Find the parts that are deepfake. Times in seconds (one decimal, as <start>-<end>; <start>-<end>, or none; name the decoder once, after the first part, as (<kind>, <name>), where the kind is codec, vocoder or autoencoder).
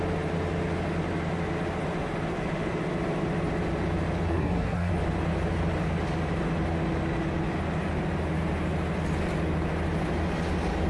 4.3-4.9 (codec, SNAC)